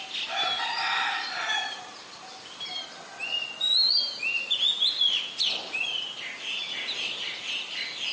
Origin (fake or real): real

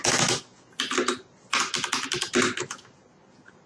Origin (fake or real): real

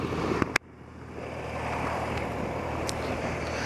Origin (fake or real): fake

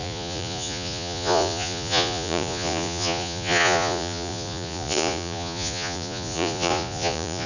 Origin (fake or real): fake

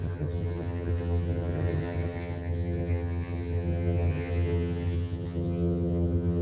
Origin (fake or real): fake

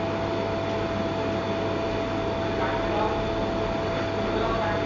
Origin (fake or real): real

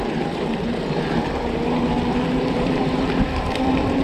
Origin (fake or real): fake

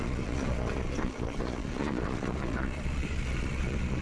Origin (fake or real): fake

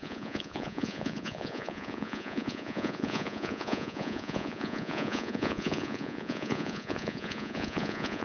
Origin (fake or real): fake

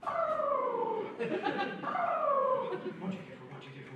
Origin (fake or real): real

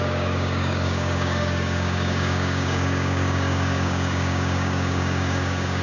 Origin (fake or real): fake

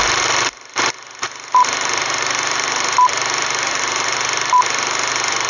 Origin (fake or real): fake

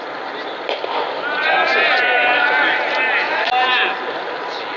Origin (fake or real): real